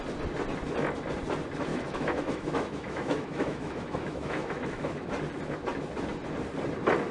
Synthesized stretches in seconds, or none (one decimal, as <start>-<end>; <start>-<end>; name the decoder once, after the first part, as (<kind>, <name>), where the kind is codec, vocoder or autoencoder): 1.7-5.1 (autoencoder, DAC-VAE)